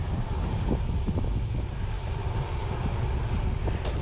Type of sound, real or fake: real